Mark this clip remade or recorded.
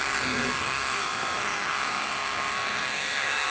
remade